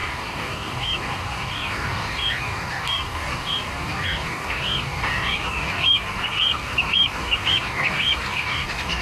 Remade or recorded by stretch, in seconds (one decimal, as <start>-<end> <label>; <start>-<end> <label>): 0.0-9.0 remade